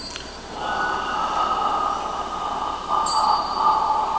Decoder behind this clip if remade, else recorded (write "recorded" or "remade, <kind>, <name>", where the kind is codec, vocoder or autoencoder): recorded